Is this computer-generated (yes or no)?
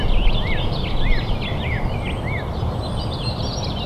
yes